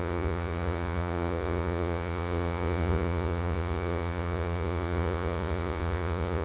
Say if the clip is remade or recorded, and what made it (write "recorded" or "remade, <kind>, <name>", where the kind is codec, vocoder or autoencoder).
remade, vocoder, Vocos